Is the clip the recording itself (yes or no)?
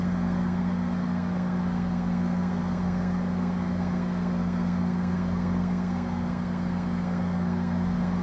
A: no